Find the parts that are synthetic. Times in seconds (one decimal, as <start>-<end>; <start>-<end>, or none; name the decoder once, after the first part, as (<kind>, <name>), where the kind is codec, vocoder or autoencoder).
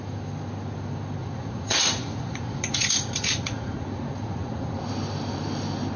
1.2-4.8 (vocoder, Vocos)